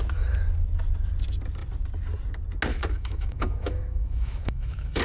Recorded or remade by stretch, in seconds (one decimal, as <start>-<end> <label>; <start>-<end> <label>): 0.0-2.7 recorded; 2.7-5.0 remade